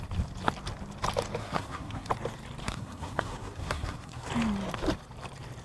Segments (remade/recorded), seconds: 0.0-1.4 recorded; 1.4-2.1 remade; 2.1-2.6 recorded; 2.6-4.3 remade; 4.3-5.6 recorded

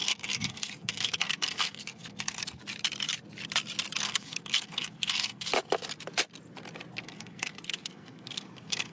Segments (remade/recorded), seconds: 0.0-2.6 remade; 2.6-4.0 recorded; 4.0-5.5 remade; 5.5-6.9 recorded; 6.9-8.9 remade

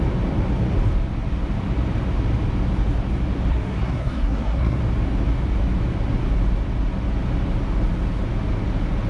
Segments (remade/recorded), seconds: 0.0-3.5 recorded; 3.5-4.8 remade; 4.8-9.1 recorded

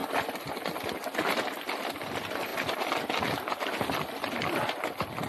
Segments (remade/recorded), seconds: 0.0-5.3 recorded